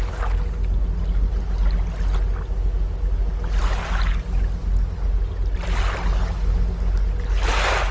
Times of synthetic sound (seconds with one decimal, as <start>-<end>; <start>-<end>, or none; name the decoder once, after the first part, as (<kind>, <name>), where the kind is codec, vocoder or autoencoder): none